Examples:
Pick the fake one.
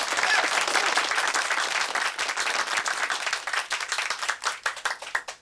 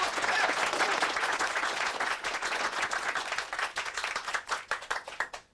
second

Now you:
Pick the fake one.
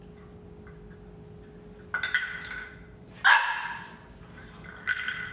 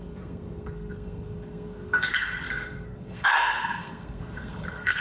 second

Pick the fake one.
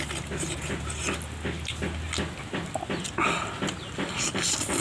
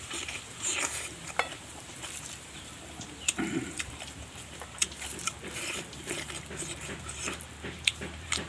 second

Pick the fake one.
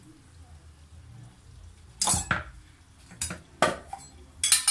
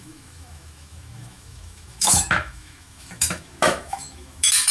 second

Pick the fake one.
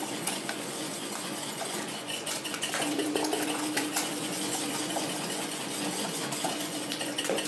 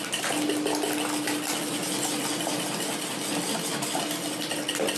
first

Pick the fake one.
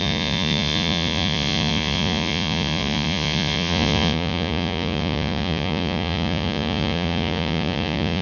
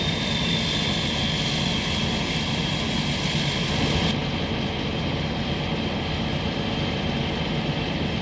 first